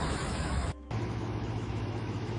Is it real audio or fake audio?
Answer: fake